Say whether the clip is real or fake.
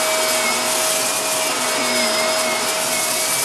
real